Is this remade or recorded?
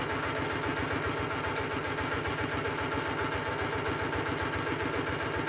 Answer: recorded